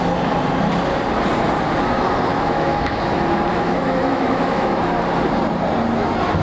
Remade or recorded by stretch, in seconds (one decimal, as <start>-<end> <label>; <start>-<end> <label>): 0.0-2.3 recorded; 2.3-3.1 remade; 3.1-3.5 recorded; 3.5-4.8 remade; 4.8-6.4 recorded